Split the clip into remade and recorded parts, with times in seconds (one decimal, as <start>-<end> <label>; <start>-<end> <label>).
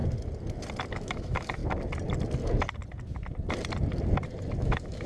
0.0-0.9 recorded; 0.9-1.6 remade; 1.6-4.6 recorded; 4.6-5.1 remade